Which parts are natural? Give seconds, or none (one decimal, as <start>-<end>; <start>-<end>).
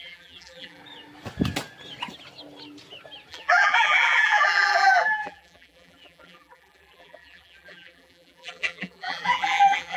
0.8-3.3